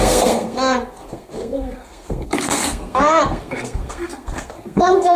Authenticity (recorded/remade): remade